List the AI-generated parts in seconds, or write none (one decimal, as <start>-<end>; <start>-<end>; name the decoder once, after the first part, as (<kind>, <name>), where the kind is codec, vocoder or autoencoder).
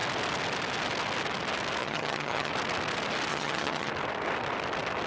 1.8-2.5 (vocoder, HiFi-GAN); 3.3-3.9